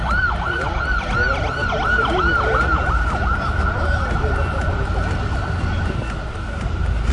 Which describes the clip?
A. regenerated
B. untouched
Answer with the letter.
A